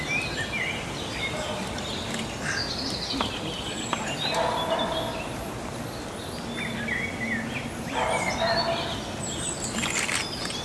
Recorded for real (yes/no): yes